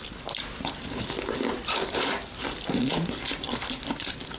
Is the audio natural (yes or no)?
no